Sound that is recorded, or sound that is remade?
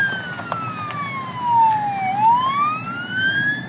recorded